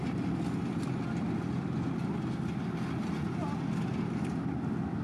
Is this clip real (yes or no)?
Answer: yes